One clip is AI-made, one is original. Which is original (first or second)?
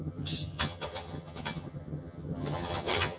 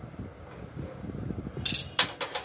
second